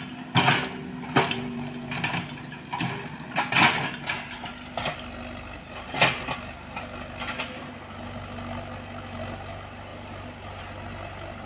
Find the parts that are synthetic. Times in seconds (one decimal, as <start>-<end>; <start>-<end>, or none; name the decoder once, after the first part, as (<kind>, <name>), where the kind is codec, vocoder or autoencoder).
none